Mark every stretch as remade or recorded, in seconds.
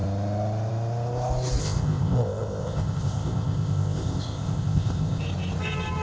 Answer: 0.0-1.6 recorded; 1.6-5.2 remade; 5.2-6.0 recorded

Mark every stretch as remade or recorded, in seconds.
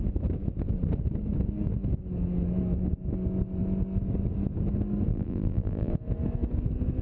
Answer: 0.0-5.1 recorded; 5.1-5.9 remade; 5.9-7.0 recorded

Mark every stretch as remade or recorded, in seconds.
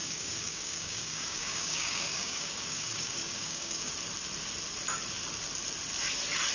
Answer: 0.0-3.9 remade; 3.9-6.5 recorded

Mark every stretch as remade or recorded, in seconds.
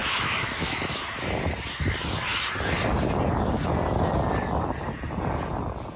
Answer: 0.0-1.0 remade; 1.0-6.0 recorded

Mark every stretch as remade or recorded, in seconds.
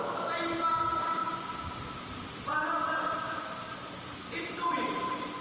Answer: 0.0-5.4 recorded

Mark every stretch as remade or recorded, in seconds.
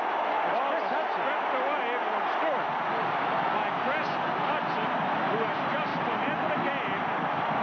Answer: 0.0-5.9 recorded; 5.9-6.5 remade; 6.5-7.6 recorded